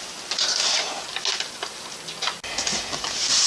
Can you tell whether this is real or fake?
real